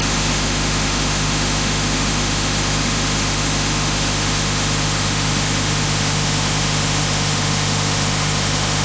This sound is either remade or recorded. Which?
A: remade